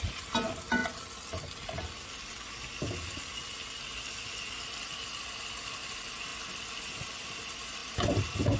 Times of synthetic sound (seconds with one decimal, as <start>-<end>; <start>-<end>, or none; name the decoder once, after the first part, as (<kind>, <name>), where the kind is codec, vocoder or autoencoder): none